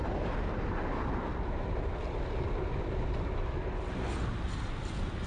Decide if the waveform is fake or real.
real